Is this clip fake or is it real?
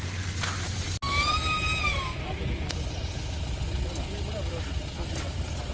real